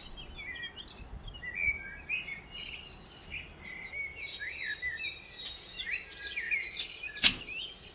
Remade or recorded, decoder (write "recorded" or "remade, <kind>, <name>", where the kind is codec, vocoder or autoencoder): recorded